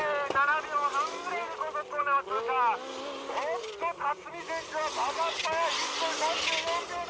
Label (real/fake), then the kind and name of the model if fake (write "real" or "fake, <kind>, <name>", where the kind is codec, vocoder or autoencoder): real